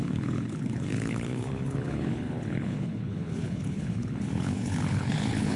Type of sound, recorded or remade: remade